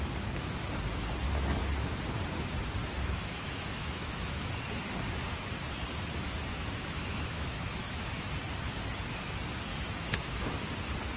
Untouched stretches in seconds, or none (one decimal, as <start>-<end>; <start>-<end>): 0.0-2.8; 4.5-6.5; 8.3-9.7; 10.7-11.2